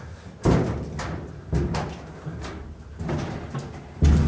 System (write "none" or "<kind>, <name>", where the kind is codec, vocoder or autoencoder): none